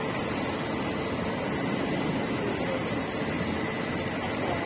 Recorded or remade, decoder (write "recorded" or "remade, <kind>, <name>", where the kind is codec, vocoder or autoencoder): recorded